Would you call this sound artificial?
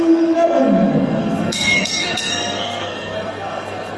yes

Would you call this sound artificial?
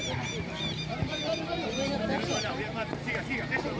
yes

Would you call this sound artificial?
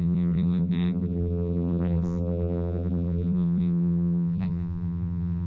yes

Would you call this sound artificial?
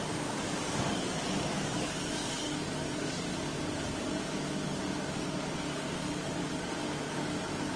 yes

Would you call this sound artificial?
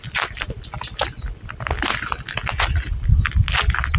no